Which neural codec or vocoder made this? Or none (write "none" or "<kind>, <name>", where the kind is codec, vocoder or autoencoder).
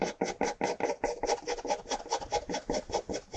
none